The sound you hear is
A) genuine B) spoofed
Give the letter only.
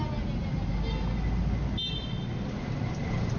A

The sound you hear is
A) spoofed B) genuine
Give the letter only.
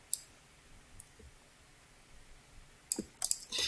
B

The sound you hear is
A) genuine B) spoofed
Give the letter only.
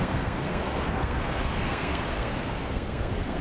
B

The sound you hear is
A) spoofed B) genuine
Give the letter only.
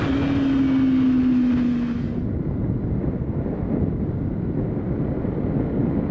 B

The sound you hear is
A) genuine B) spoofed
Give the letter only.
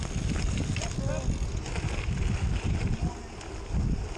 A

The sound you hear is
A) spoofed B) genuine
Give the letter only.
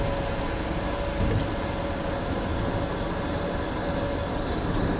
B